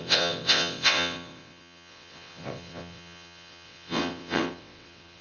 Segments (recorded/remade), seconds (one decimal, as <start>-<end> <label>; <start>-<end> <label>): 0.0-5.2 remade